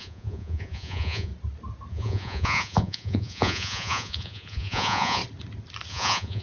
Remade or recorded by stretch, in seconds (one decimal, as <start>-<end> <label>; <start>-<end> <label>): 0.0-1.3 remade; 1.3-1.9 recorded; 1.9-5.2 remade; 5.2-5.9 recorded; 5.9-6.4 remade